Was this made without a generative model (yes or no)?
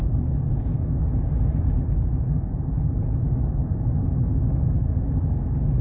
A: yes